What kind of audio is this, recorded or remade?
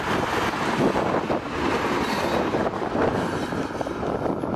recorded